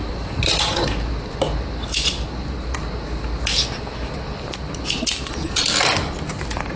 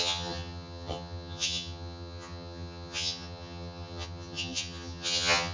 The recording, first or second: first